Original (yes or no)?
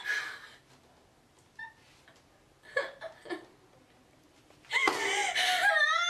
yes